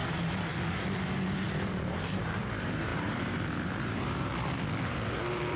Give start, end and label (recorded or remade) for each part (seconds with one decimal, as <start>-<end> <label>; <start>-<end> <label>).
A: 0.0-1.5 recorded; 1.5-4.3 remade; 4.3-4.8 recorded; 4.8-5.6 remade